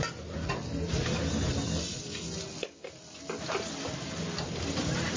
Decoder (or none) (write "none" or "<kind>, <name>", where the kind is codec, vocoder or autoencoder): none